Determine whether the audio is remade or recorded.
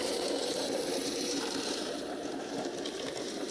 remade